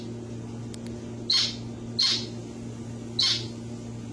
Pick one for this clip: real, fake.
real